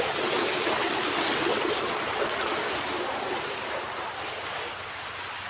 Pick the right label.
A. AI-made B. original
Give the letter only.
B